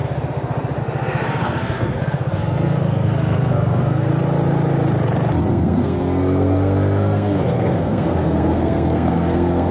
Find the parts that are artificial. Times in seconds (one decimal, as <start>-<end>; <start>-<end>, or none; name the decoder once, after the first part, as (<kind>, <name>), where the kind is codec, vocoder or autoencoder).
0.8-4.1 (codec, SNAC); 5.5-9.7